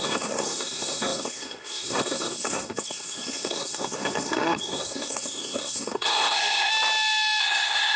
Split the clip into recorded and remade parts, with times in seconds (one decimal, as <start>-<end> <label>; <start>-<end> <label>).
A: 0.0-6.7 remade; 6.7-7.4 recorded; 7.4-8.0 remade